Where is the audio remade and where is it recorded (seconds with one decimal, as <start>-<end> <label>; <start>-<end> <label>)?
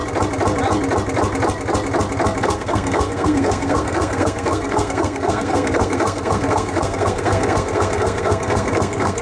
0.0-2.4 recorded; 2.4-9.2 remade